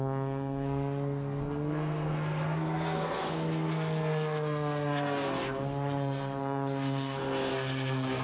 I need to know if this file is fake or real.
fake